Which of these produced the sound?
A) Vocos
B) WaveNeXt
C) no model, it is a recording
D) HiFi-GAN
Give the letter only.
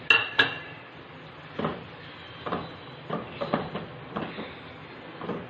C